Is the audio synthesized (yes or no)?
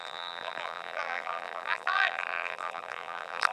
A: yes